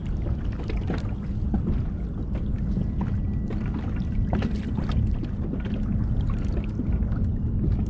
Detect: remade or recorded recorded